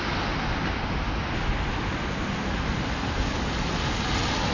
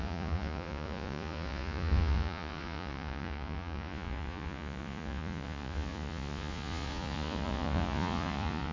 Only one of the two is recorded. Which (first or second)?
first